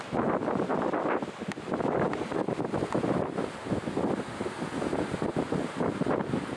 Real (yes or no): yes